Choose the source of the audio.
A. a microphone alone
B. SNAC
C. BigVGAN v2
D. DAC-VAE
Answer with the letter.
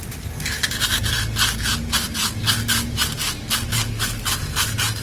A